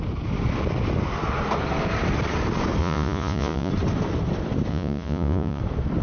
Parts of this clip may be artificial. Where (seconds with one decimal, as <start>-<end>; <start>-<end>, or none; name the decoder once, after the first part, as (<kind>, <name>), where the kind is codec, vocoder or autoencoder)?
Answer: 2.8-3.7 (vocoder, Vocos); 4.7-5.6